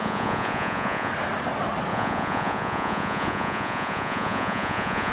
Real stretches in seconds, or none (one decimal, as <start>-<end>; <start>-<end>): 1.1-1.9